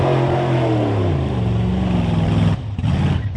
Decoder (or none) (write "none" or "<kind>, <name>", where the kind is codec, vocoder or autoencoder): none